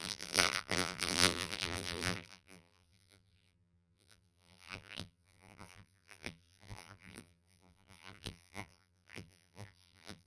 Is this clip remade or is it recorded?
remade